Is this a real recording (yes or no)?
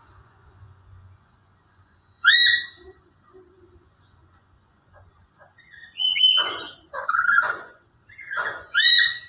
no